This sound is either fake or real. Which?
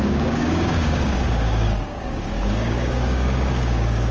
fake